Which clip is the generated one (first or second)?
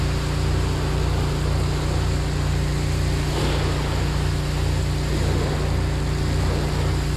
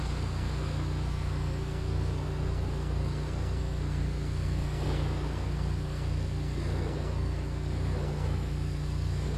second